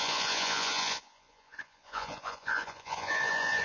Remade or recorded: remade